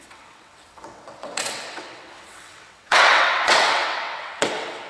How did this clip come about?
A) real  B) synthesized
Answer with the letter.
B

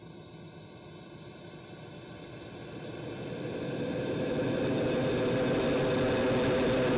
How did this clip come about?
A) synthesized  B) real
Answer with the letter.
B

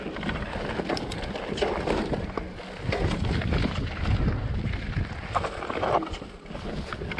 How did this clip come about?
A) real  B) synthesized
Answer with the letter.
A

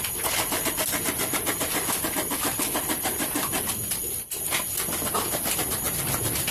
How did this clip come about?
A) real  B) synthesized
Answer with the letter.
A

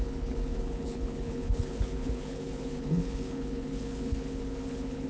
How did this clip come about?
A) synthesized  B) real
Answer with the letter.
A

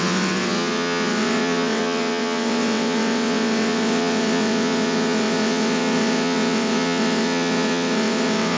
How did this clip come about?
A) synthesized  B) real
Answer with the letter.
A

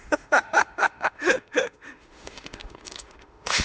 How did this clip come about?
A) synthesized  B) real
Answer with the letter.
A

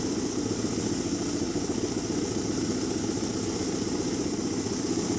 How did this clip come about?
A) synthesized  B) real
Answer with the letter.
B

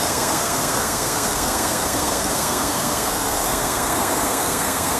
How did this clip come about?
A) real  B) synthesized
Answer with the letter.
B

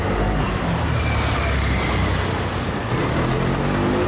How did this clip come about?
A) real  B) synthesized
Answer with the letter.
A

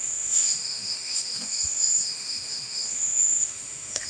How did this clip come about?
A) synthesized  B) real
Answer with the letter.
A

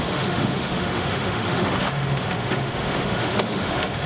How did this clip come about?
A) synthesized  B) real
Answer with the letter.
A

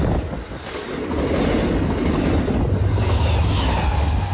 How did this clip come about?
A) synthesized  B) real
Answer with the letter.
B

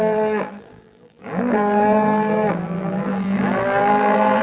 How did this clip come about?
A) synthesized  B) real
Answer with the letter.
A